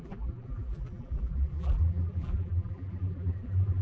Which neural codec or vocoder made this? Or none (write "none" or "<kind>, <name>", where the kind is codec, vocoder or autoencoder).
vocoder, BigVGAN v2